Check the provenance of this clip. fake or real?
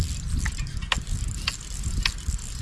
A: real